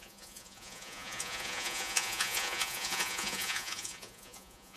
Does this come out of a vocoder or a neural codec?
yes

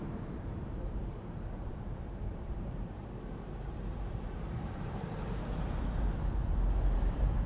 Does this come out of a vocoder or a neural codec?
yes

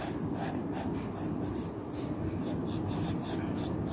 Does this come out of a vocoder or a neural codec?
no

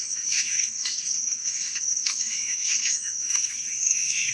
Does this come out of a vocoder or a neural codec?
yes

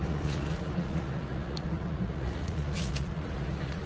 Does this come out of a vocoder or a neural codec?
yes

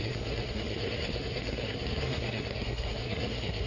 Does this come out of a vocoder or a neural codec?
yes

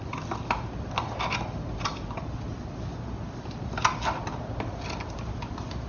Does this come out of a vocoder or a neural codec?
no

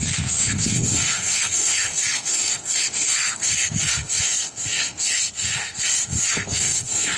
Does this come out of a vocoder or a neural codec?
yes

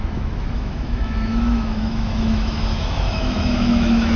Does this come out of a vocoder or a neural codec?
yes